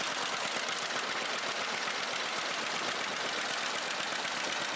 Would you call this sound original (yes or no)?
yes